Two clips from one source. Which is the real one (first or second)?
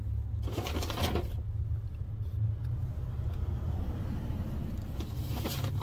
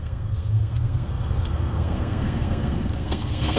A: first